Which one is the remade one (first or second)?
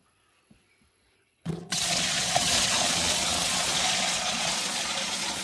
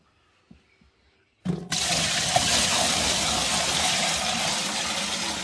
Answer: first